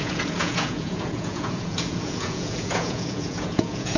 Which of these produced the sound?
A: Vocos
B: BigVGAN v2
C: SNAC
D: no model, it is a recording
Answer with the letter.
A